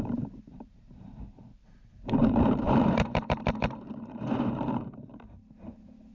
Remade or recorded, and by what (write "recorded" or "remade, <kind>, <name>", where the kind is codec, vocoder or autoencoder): remade, vocoder, BigVGAN v2